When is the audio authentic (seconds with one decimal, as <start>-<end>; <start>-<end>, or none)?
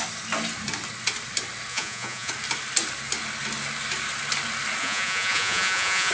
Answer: 0.0-1.7; 2.3-4.8